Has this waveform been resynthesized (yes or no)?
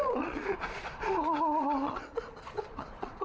yes